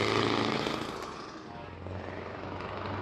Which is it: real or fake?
real